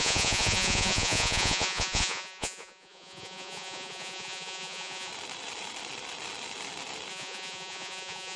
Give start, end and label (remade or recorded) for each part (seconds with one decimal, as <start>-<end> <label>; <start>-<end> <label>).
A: 0.0-5.1 remade; 5.1-7.1 recorded; 7.1-8.4 remade